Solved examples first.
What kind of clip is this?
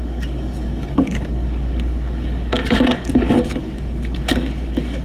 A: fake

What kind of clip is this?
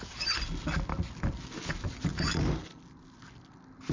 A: real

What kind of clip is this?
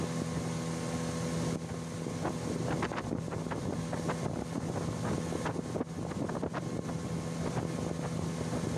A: real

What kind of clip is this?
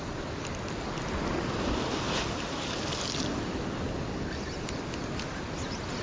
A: real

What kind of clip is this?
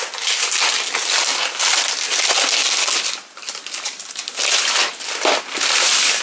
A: real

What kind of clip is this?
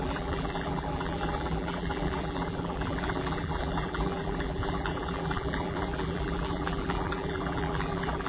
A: fake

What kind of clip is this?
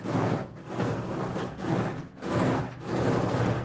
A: fake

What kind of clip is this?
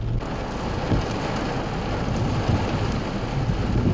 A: real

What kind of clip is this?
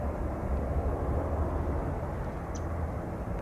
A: fake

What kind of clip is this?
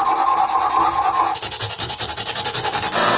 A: real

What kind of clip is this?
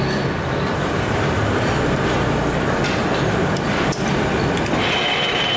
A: real